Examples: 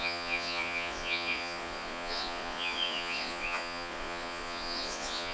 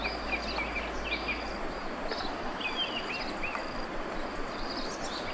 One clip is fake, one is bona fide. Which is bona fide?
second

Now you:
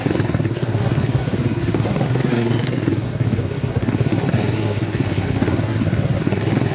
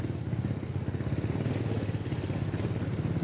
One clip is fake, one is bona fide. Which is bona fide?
second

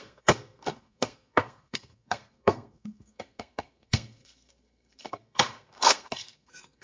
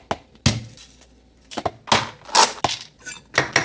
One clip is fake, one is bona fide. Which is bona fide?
second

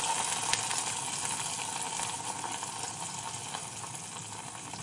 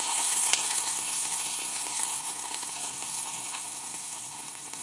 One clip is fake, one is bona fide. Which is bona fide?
first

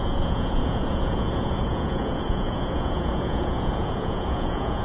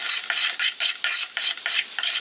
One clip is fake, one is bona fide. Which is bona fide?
second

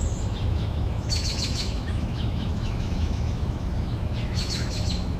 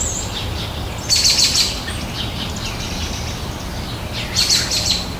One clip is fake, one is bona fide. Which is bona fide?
second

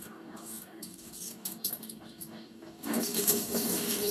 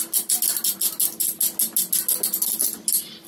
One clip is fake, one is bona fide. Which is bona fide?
second